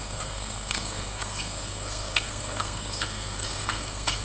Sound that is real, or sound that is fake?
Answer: fake